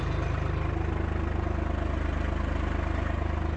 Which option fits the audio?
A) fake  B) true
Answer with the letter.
B